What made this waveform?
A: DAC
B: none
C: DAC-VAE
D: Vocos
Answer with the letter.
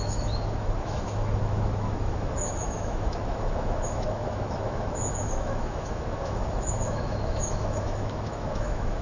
C